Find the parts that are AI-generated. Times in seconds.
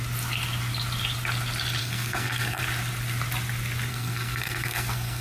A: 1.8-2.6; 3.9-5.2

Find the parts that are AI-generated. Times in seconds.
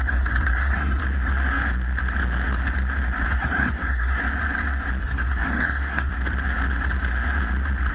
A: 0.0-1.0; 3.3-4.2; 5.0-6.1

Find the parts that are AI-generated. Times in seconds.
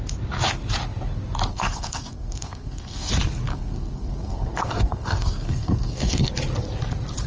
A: 1.5-3.1; 3.5-6.3